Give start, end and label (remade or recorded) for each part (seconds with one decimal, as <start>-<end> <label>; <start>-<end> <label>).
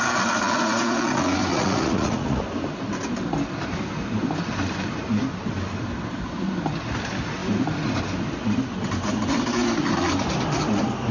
0.0-1.5 recorded; 1.5-2.4 remade; 2.4-11.1 recorded